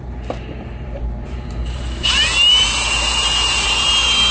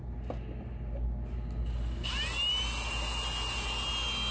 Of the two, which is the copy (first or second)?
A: first